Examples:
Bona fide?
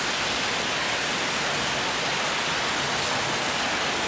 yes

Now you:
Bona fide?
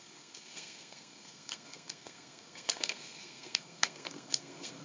no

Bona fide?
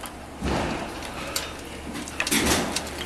yes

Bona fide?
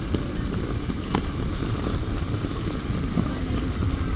yes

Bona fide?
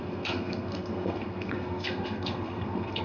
no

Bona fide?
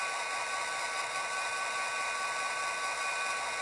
yes